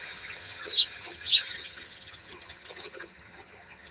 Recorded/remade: remade